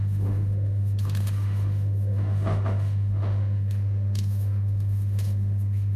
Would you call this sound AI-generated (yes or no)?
yes